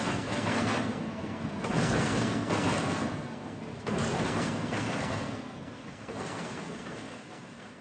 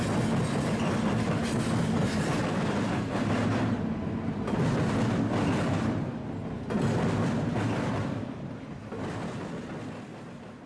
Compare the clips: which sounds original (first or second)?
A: second